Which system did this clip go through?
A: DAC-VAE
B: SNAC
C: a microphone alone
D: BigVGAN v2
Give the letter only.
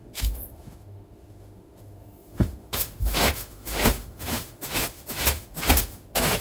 A